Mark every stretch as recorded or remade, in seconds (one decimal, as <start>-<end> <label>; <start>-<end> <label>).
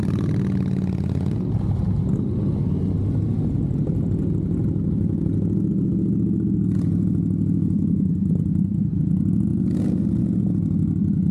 0.0-11.3 recorded